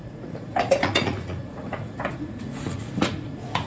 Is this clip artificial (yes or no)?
yes